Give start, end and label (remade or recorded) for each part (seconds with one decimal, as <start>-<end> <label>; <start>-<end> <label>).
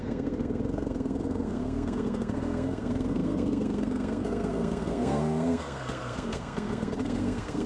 0.0-7.7 remade